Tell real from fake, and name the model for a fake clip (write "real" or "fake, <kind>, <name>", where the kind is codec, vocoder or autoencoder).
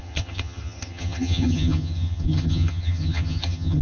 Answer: fake, vocoder, HiFi-GAN